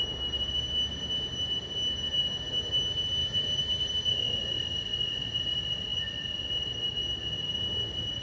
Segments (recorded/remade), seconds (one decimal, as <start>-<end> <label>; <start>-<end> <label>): 0.0-1.3 recorded; 1.3-1.9 remade; 1.9-3.2 recorded; 3.2-3.9 remade; 3.9-8.2 recorded